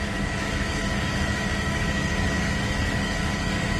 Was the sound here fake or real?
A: fake